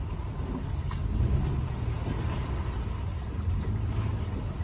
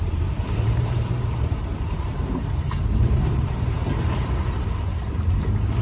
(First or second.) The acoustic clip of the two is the first